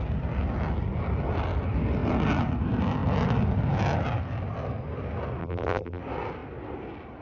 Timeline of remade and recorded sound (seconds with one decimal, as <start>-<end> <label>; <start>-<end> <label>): 0.0-5.4 recorded; 5.4-6.0 remade; 6.0-7.2 recorded